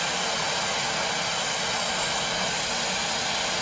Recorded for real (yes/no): yes